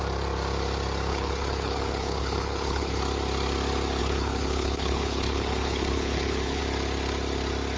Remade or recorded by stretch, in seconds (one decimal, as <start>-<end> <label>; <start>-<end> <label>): 0.0-1.1 recorded; 1.1-3.0 remade; 3.0-4.0 recorded; 4.0-6.6 remade; 6.6-7.8 recorded